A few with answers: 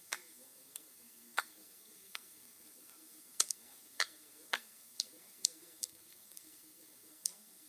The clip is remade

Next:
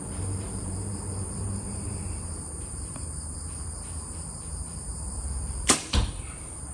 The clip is remade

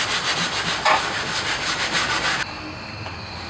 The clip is recorded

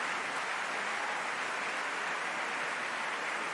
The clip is recorded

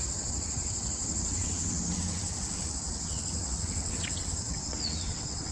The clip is remade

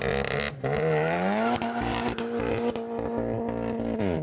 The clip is recorded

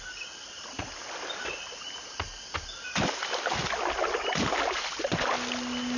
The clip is recorded